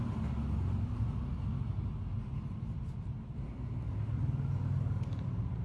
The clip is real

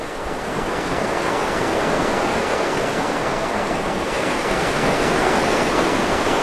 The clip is fake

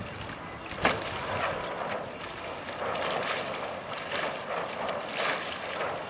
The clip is real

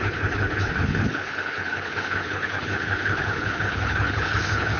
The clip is fake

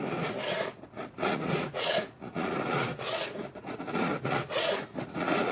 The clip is fake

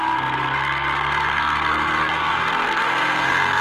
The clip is fake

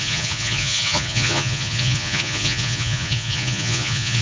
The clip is fake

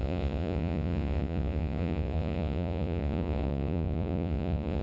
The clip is fake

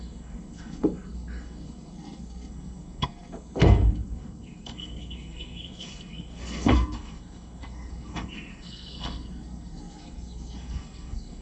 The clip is fake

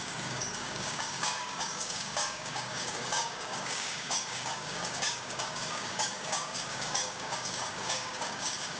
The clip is fake